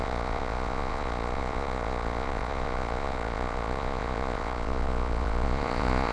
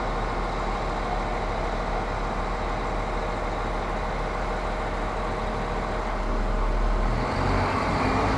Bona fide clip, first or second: second